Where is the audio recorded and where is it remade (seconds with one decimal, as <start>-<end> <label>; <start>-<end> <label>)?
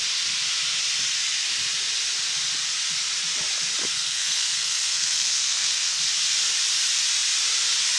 0.0-3.9 recorded; 3.9-6.0 remade; 6.0-8.0 recorded